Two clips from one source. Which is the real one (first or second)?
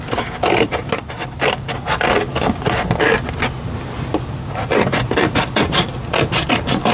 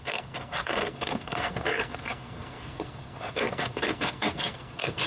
first